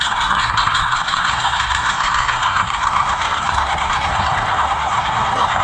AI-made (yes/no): yes